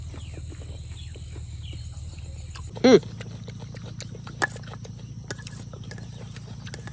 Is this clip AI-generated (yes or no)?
no